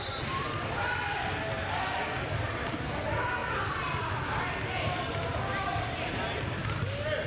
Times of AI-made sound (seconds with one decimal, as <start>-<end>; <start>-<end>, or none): 1.1-3.0